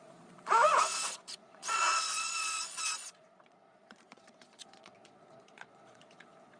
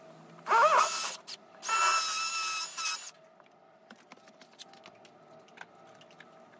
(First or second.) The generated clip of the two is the first